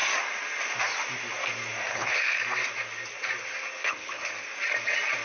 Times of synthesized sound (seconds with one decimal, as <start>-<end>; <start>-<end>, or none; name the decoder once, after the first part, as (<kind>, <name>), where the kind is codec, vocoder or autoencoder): 1.9-2.4 (codec, HILCodec); 3.8-4.3